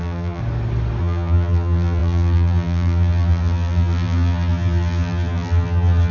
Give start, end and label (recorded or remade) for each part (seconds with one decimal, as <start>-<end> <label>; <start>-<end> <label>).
0.0-0.4 remade; 0.4-1.0 recorded; 1.0-6.1 remade